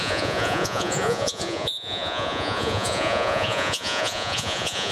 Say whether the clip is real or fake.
fake